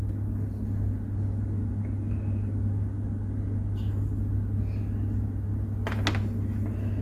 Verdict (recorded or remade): recorded